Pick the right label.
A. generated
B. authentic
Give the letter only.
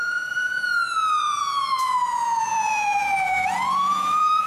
A